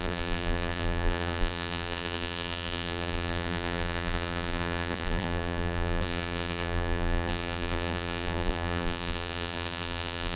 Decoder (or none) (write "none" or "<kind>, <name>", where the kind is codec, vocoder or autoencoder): vocoder, BigVGAN v2